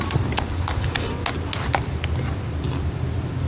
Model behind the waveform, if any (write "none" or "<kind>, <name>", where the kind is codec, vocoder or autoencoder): none